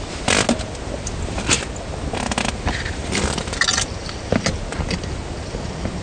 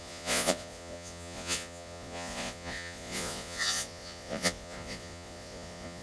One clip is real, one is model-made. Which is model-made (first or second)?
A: second